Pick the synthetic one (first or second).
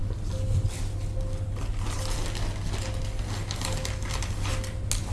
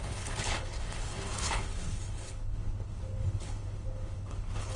second